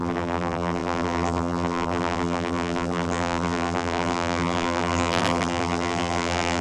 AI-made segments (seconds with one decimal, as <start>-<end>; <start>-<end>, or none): 0.0-6.6

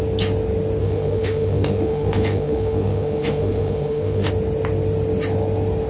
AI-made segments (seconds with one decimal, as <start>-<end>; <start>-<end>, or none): 0.8-4.3

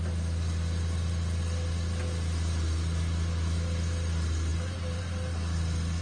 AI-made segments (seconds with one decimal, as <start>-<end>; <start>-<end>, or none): none